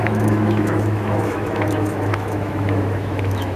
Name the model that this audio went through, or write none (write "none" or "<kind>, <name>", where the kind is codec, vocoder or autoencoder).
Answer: autoencoder, DAC-VAE